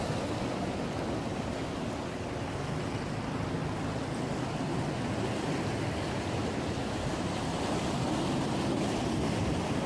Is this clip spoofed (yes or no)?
no